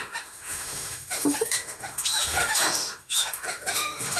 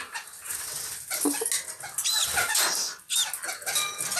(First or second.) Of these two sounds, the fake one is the first